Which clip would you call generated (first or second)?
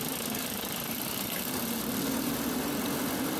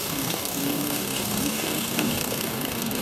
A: second